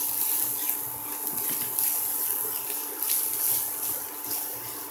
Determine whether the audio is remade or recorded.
recorded